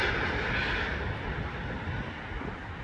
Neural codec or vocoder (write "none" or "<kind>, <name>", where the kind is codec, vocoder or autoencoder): none